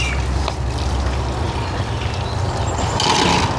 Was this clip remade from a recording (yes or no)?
no